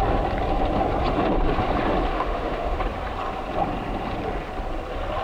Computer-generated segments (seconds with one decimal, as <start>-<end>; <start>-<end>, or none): 2.1-2.8